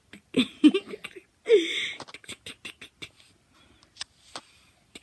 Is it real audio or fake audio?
real